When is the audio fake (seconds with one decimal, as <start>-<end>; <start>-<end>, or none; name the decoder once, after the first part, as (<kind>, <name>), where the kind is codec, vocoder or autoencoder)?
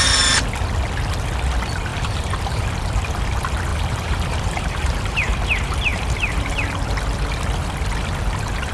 1.9-2.6 (vocoder, BigVGAN v2); 3.7-5.3; 5.9-6.6